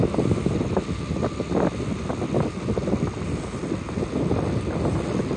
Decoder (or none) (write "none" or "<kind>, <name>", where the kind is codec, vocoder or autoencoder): none